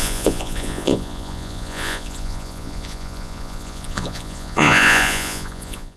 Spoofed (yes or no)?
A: yes